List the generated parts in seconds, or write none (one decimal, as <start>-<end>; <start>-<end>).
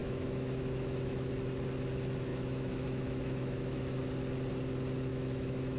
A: 0.0-1.3; 2.3-4.0; 5.1-5.8